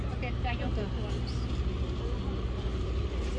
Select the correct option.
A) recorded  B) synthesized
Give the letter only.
A